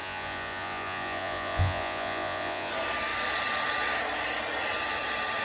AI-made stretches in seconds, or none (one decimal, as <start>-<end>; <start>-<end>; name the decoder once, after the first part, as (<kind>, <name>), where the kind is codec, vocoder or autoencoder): 0.0-2.7 (vocoder, Vocos)